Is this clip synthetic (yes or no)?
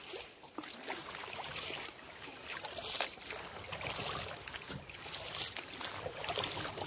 no